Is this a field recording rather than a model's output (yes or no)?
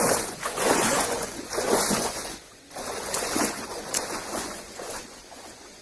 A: no